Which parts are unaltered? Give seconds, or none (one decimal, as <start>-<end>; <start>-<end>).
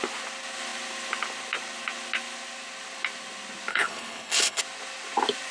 0.0-3.7; 4.6-5.5